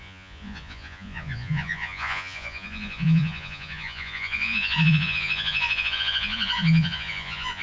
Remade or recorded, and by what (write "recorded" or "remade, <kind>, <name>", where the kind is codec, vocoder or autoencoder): remade, vocoder, Vocos